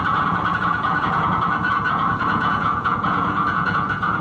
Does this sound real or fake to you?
fake